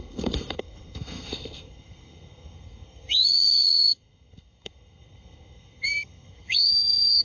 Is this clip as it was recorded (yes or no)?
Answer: no